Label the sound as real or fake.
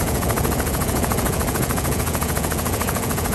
fake